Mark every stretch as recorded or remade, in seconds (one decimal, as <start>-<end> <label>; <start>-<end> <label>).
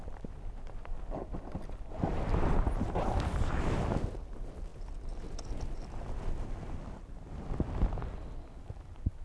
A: 0.0-9.2 recorded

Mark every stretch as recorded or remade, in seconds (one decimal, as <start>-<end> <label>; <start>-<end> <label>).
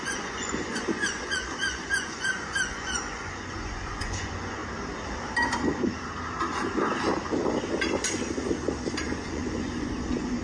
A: 0.0-4.6 remade; 4.6-8.9 recorded; 8.9-10.4 remade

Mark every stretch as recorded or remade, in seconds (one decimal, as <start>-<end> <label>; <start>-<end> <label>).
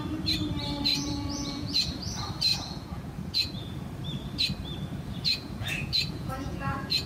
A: 0.0-0.9 recorded; 0.9-1.9 remade; 1.9-2.5 recorded; 2.5-3.6 remade; 3.6-5.3 recorded; 5.3-7.1 remade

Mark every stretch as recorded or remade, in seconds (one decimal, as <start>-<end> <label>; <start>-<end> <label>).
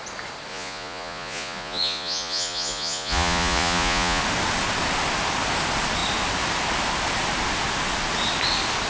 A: 0.0-0.5 recorded; 0.5-4.2 remade; 4.2-8.9 recorded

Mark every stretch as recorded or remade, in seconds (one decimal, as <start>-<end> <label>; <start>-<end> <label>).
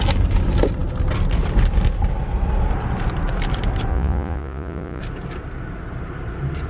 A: 0.0-3.9 recorded; 3.9-5.0 remade; 5.0-6.7 recorded